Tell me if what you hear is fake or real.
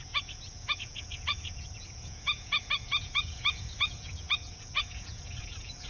fake